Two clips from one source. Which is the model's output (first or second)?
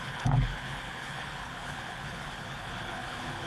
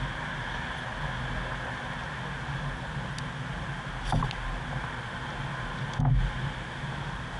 first